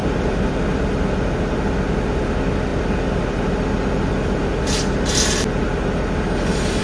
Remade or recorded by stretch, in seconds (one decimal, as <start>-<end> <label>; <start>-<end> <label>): 0.0-0.5 remade; 0.5-6.8 recorded